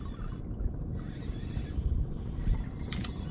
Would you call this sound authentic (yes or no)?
yes